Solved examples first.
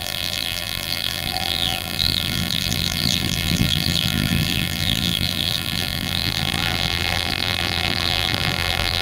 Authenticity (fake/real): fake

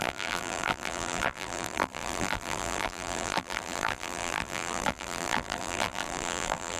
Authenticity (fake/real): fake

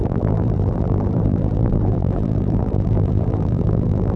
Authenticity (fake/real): fake